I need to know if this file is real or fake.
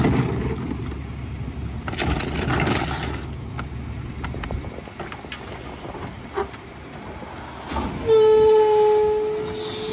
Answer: real